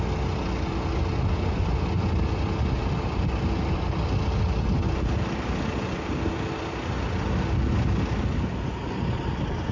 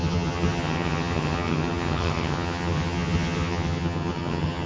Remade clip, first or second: second